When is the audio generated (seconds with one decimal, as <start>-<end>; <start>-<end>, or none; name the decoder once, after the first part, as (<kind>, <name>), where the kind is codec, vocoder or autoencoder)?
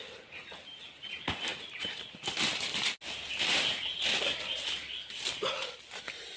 none